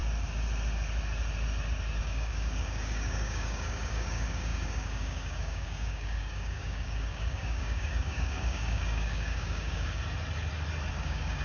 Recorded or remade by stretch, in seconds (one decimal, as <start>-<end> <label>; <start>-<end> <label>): 0.0-2.0 recorded; 2.0-10.0 remade; 10.0-10.9 recorded; 10.9-11.4 remade